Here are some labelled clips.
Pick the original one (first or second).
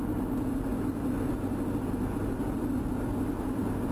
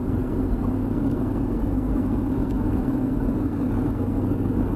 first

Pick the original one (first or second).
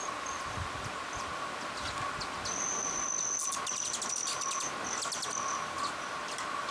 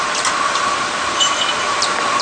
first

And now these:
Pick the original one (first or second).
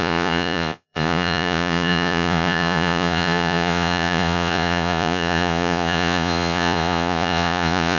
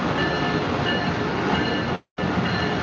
second